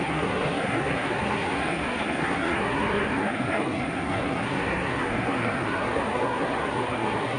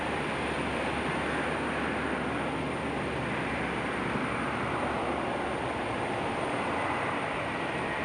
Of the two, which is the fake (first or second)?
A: first